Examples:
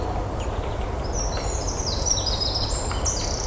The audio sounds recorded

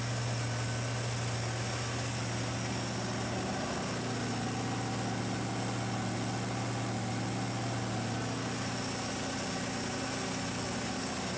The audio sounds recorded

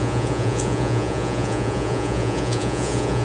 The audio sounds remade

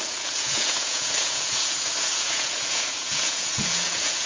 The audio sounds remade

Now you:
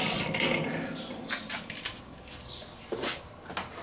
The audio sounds recorded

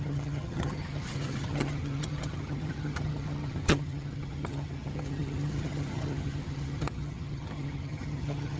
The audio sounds remade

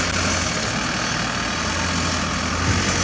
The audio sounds recorded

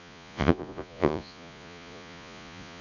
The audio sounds remade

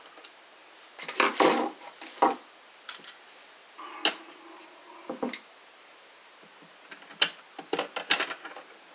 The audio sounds recorded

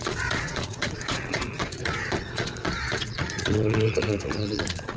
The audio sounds remade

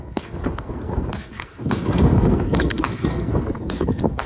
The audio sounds remade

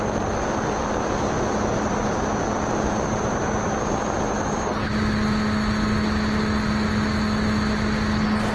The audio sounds recorded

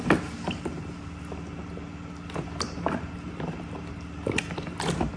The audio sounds recorded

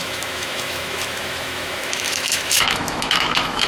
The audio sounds remade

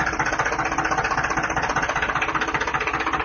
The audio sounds recorded